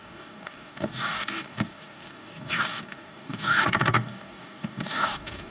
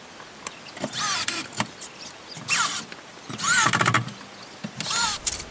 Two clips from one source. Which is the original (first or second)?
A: second